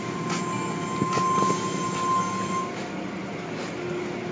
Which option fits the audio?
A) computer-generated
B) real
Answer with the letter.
B